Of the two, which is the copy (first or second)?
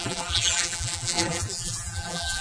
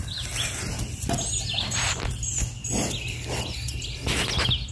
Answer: first